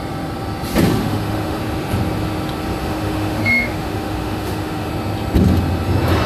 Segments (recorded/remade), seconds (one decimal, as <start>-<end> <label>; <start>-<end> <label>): 0.0-1.0 recorded; 1.0-1.6 remade; 1.6-2.8 recorded; 2.8-4.9 remade; 4.9-6.3 recorded